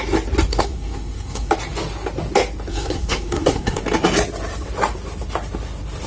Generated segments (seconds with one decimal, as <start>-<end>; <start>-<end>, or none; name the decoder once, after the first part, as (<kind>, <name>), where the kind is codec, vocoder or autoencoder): 0.5-1.5 (codec, SNAC); 2.7-3.8